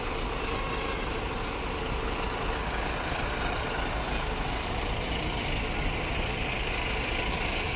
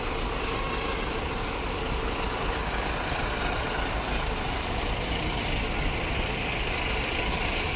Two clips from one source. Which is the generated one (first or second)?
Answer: second